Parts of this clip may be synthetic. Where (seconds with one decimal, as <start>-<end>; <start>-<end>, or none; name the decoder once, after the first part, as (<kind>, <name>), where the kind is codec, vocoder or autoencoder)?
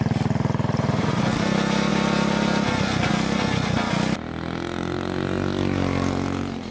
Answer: none